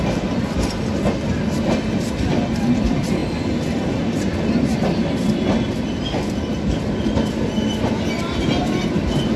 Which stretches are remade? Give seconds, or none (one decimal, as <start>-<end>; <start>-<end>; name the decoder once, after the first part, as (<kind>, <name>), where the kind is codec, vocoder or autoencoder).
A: none